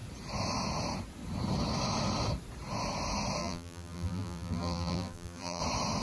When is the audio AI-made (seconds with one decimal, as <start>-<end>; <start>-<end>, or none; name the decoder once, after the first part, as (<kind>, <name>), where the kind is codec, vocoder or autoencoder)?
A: 3.4-5.6 (vocoder, BigVGAN v2)